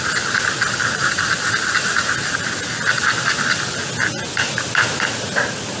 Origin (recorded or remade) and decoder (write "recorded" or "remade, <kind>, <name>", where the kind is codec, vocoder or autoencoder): recorded